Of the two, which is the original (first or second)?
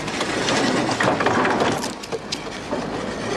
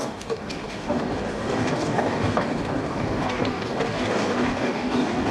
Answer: first